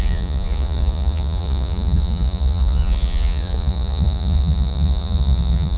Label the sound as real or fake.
fake